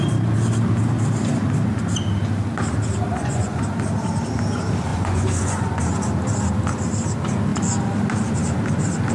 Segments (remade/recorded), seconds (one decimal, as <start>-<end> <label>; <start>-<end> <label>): 0.0-3.1 recorded; 3.1-3.6 remade; 3.6-4.9 recorded; 4.9-5.7 remade; 5.7-9.1 recorded